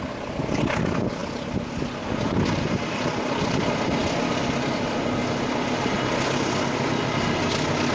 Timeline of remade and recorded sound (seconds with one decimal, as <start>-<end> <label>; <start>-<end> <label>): 0.0-7.9 recorded